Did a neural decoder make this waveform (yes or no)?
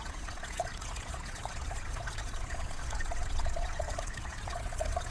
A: yes